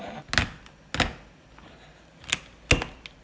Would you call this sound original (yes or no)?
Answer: yes